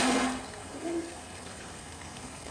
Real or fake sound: fake